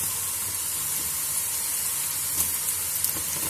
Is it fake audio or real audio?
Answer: real